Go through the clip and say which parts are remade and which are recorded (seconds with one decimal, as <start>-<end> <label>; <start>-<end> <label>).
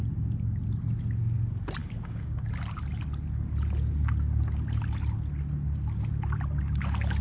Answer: 0.0-1.8 recorded; 1.8-2.4 remade; 2.4-7.2 recorded